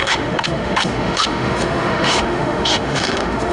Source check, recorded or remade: remade